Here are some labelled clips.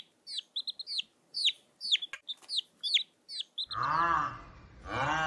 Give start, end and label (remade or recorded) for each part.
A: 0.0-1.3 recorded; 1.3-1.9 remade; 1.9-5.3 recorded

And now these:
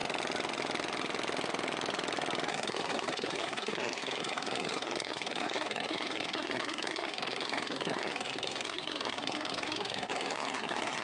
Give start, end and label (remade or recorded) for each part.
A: 0.0-2.5 recorded; 2.5-11.0 remade

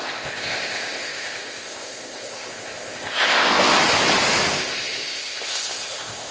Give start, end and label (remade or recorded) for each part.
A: 0.0-3.7 remade; 3.7-4.5 recorded; 4.5-6.3 remade